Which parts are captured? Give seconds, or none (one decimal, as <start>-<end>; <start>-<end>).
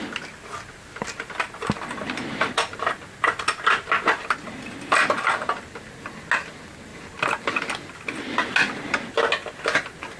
0.0-10.2